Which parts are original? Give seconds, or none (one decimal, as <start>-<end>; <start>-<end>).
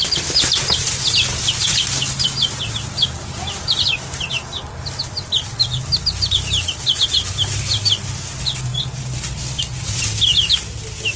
0.0-11.2